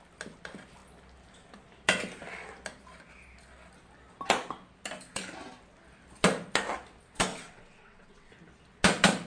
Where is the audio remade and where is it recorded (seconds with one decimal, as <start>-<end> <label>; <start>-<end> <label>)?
0.0-7.3 recorded; 7.3-8.3 remade; 8.3-9.3 recorded